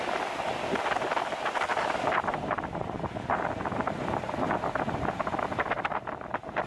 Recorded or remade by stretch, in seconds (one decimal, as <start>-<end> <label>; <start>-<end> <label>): 0.0-6.7 recorded